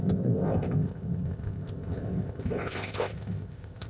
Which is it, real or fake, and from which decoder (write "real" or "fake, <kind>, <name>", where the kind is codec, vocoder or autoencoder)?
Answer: fake, codec, ZipCodec